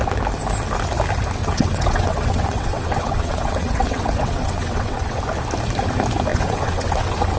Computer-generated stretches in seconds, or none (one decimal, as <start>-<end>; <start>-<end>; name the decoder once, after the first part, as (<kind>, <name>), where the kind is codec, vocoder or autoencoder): 1.4-5.2 (vocoder, WaveNeXt); 6.3-7.4